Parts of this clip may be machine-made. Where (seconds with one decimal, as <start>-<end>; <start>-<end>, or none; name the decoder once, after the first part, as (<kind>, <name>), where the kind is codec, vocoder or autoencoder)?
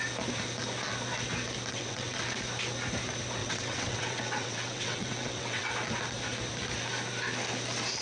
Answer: 1.7-2.2 (vocoder, WaveNeXt); 3.4-5.7